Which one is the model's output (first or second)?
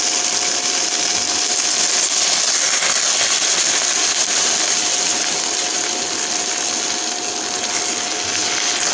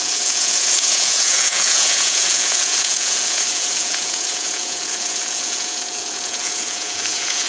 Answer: second